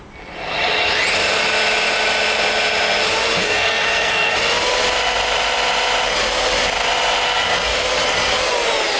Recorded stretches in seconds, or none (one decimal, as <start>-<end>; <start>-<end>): 0.0-3.4; 4.3-9.0